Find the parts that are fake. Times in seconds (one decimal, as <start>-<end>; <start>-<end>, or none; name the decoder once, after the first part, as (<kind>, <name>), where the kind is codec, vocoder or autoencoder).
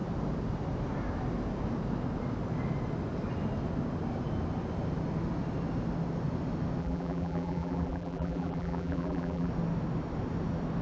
6.8-9.5 (vocoder, BigVGAN v2)